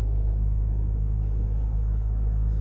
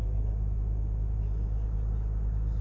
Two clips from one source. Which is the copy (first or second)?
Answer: first